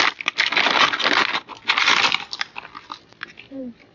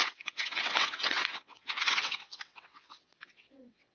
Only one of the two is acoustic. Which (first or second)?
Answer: first